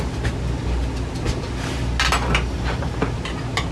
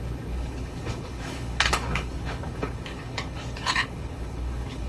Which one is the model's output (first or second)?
second